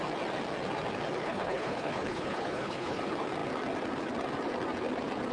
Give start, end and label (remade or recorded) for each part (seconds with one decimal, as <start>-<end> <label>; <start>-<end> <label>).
0.0-1.2 recorded; 1.2-3.0 remade; 3.0-5.3 recorded